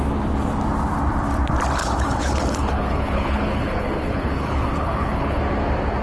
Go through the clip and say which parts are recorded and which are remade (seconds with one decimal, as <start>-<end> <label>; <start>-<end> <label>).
0.0-1.8 recorded; 1.8-5.4 remade; 5.4-6.0 recorded